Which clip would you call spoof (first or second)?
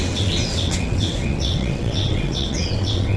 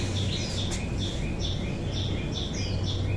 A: first